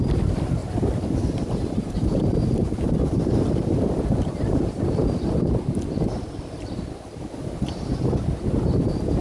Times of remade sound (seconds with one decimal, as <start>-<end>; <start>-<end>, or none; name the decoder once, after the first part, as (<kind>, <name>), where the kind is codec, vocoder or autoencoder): 0.6-2.7 (vocoder, BigVGAN v2)